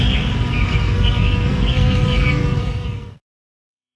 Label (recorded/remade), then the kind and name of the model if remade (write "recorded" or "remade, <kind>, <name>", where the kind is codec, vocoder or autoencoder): remade, codec, SNAC